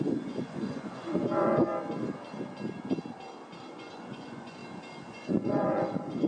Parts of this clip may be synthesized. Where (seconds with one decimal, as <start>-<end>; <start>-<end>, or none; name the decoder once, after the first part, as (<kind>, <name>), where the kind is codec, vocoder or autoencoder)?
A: 0.0-1.7 (vocoder, Vocos); 3.7-4.6; 5.1-6.3